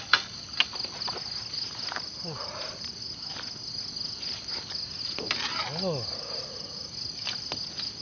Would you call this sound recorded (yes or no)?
yes